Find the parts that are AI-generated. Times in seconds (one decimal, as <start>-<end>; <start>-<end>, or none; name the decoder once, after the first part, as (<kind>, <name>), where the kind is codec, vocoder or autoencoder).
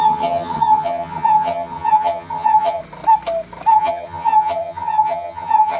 0.0-2.8 (vocoder, HiFi-GAN); 3.7-5.8